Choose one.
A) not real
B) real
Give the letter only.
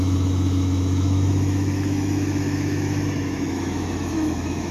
A